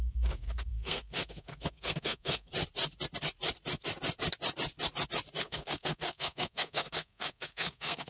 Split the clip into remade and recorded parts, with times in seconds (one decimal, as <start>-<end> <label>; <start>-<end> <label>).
0.0-2.5 remade; 2.5-5.4 recorded; 5.4-8.1 remade

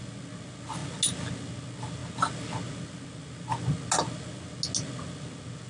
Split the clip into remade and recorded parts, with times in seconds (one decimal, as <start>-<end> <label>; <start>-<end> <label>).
0.0-5.7 recorded

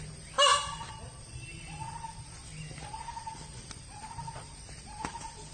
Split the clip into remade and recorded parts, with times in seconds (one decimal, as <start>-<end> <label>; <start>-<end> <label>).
0.0-5.5 recorded

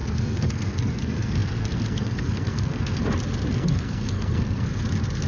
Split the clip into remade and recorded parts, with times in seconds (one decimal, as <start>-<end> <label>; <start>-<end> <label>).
0.0-3.0 remade; 3.0-3.5 recorded; 3.5-4.7 remade; 4.7-5.3 recorded

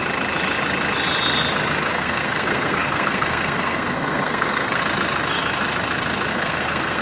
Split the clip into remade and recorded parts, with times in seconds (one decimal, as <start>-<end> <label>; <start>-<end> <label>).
0.0-1.9 recorded; 1.9-4.8 remade; 4.8-6.3 recorded; 6.3-7.0 remade

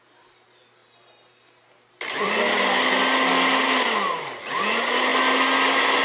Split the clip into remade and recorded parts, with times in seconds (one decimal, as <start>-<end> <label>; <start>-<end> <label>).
0.0-6.0 recorded

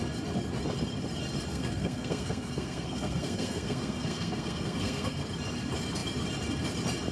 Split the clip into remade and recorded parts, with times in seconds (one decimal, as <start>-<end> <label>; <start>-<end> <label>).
0.0-1.5 recorded; 1.5-5.2 remade; 5.2-7.1 recorded

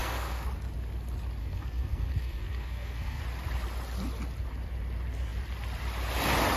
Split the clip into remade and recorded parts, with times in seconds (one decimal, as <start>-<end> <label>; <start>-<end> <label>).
0.0-0.5 remade; 0.5-1.4 recorded; 1.4-3.2 remade; 3.2-6.6 recorded